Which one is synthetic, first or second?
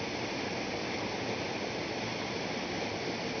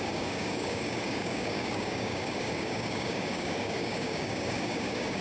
second